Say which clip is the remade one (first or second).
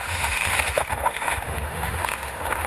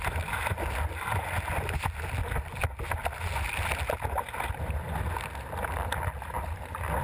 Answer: first